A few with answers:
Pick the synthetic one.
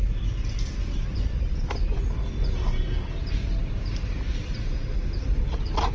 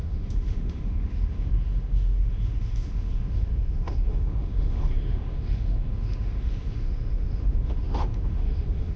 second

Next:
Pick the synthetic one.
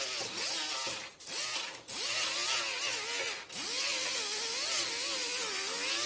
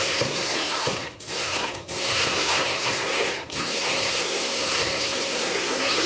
second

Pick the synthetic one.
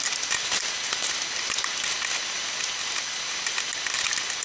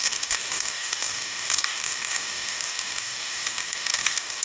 second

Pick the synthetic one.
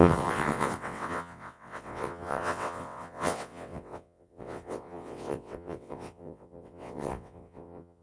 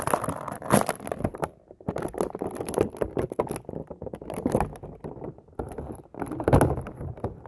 first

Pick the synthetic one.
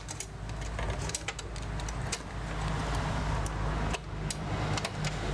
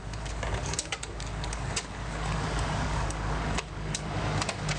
second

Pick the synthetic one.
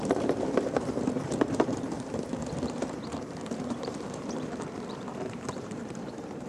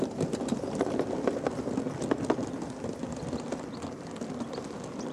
first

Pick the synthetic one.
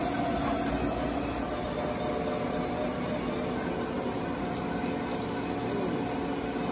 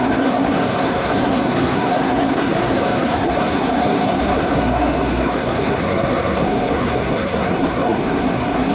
second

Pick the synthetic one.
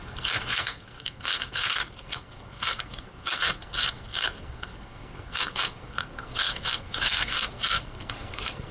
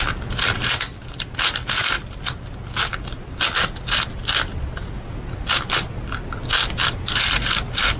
first